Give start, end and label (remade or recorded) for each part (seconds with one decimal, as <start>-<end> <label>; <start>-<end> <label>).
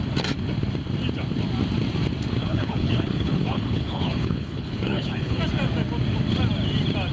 0.0-2.4 recorded; 2.4-5.4 remade; 5.4-7.1 recorded